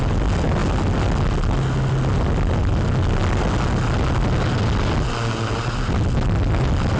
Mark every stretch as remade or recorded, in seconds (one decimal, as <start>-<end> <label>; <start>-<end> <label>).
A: 0.0-7.0 recorded